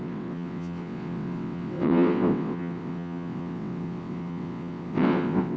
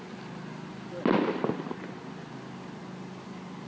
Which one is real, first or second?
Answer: second